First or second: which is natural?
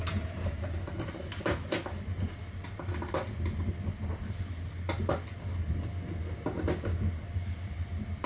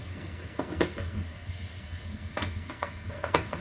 first